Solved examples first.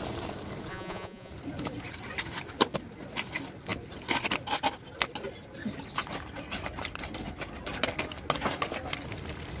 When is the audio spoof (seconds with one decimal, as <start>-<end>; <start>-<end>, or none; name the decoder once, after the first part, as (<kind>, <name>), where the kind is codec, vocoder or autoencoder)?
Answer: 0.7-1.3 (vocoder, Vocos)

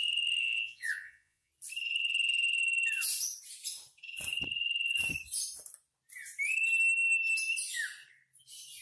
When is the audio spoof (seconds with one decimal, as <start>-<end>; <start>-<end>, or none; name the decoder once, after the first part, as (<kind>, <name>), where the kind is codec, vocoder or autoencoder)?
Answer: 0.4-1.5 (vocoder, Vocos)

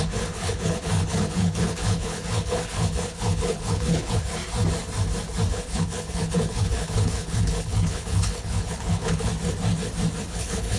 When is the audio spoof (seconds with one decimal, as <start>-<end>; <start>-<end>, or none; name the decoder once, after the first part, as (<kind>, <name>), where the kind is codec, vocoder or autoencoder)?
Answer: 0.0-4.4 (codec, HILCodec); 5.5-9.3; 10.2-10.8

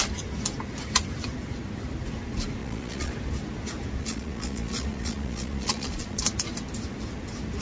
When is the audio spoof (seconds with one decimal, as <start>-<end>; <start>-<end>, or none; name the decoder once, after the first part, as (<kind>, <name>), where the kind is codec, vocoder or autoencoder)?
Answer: 2.6-3.1 (vocoder, Vocos); 4.0-6.2

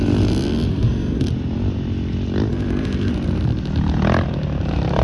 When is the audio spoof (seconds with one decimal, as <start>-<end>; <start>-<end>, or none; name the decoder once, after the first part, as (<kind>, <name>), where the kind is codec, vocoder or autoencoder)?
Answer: 0.7-1.3 (codec, SNAC); 2.5-3.1

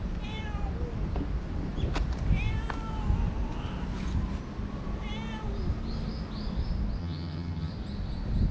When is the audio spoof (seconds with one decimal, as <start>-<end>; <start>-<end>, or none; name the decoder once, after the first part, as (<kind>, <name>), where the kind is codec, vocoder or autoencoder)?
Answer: 7.0-7.7 (vocoder, HiFi-GAN)